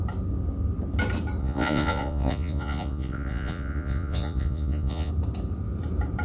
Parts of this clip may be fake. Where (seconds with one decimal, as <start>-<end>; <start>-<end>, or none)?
1.4-5.1